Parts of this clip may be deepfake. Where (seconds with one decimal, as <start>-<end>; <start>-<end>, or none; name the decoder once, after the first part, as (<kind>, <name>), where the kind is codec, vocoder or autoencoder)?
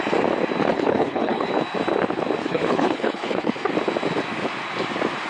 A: 0.7-1.5 (codec, HILCodec); 2.4-3.7